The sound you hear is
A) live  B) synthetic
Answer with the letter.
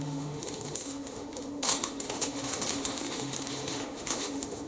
B